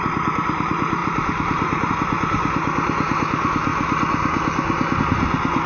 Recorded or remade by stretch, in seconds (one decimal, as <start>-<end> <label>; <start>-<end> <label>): 0.0-3.7 remade; 3.7-5.0 recorded; 5.0-5.7 remade